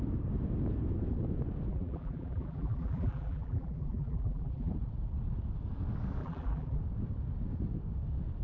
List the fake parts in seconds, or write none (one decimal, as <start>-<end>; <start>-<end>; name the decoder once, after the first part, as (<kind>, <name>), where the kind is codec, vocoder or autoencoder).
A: 1.7-4.7 (vocoder, BigVGAN v2); 6.2-6.8